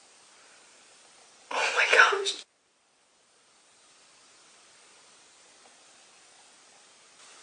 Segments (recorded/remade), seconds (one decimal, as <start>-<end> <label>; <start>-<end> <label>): 0.0-7.4 recorded